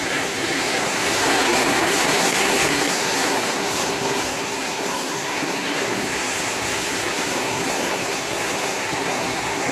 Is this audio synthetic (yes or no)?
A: yes